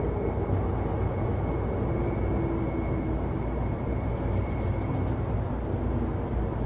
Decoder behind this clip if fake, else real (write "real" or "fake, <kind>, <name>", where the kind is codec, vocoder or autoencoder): real